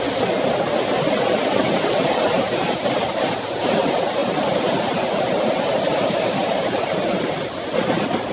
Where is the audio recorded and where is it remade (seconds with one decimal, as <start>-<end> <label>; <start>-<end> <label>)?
0.0-4.2 recorded; 4.2-5.2 remade; 5.2-5.9 recorded; 5.9-7.4 remade; 7.4-8.3 recorded